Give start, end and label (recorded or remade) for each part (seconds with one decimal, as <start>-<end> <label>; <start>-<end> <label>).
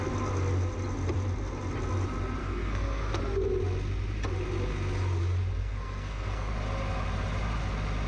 0.0-2.4 recorded; 2.4-3.2 remade; 3.2-5.6 recorded; 5.6-6.5 remade; 6.5-8.1 recorded